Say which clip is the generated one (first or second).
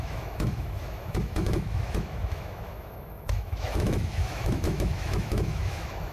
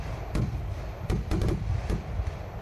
first